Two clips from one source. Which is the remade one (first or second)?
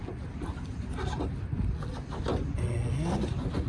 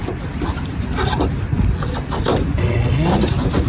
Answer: second